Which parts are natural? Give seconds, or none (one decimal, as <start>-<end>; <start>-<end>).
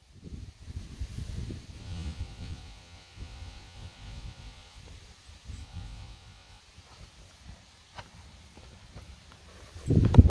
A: 0.0-1.8; 4.8-5.6; 6.6-10.3